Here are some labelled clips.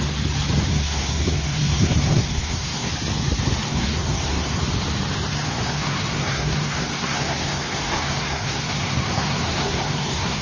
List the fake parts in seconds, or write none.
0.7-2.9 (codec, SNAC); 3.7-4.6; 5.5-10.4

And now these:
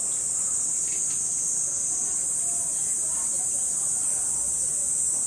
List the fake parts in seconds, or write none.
2.2-3.7 (vocoder, BigVGAN v2)

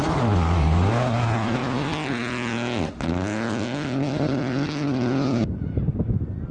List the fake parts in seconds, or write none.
none

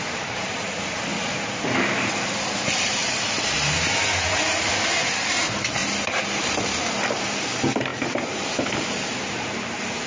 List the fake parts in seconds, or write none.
0.0-5.8 (vocoder, BigVGAN v2); 7.1-10.1